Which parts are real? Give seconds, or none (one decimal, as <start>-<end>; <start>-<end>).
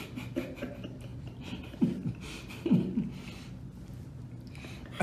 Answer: 0.0-5.0